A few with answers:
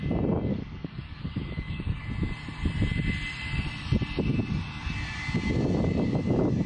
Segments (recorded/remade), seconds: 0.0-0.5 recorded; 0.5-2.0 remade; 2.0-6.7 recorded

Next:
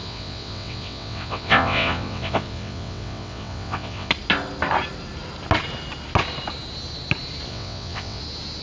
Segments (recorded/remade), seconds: 0.0-4.1 remade; 4.1-7.5 recorded; 7.5-8.2 remade; 8.2-8.6 recorded

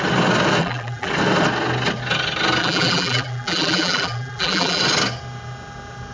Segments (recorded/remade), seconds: 0.0-0.6 recorded; 0.6-1.1 remade; 1.1-2.6 recorded; 2.6-4.8 remade; 4.8-6.1 recorded

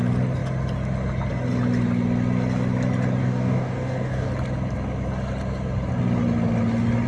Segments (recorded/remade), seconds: 0.0-3.2 recorded; 3.2-4.3 remade; 4.3-7.1 recorded

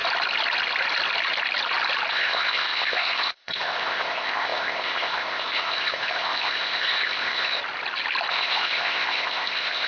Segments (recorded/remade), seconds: 0.0-2.1 recorded; 2.1-7.6 remade; 7.6-8.3 recorded; 8.3-9.9 remade

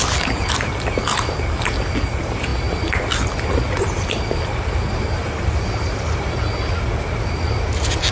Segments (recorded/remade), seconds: 0.0-8.1 recorded